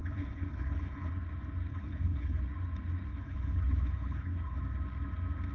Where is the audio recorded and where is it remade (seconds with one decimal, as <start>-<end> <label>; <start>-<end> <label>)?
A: 0.0-1.1 remade; 1.1-1.7 recorded; 1.7-2.4 remade; 2.4-3.1 recorded; 3.1-4.6 remade; 4.6-5.5 recorded